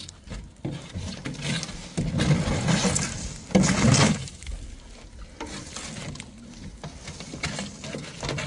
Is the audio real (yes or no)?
yes